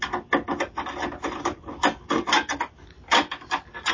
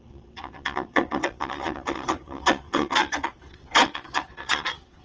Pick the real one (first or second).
first